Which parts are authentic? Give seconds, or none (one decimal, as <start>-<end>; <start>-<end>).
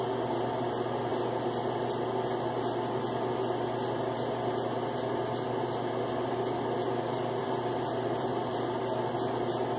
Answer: 0.0-7.4; 8.5-9.8